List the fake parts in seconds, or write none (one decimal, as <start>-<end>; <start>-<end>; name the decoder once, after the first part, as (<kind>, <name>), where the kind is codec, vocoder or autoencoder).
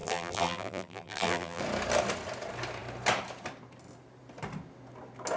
0.0-1.6 (vocoder, BigVGAN v2)